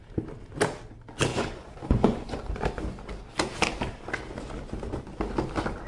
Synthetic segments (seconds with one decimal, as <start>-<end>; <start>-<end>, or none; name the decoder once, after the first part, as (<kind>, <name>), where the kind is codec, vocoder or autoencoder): 1.3-2.6 (vocoder, Vocos)